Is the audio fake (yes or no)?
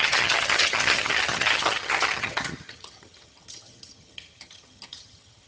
yes